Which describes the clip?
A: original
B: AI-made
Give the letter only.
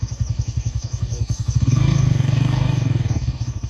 B